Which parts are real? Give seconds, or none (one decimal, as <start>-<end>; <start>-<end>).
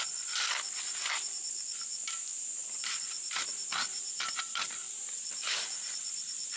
0.0-2.3; 3.0-3.9; 5.9-6.6